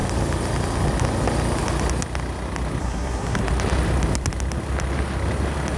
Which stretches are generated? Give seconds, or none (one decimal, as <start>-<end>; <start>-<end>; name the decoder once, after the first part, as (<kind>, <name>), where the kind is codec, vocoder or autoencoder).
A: 2.8-3.4 (codec, SNAC)